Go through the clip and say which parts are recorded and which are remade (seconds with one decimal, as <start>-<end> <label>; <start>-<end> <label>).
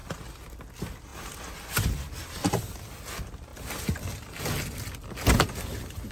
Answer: 0.0-6.1 recorded